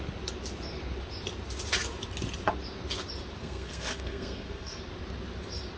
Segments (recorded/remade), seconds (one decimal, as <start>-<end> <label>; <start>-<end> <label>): 0.0-3.4 recorded; 3.4-4.8 remade; 4.8-5.8 recorded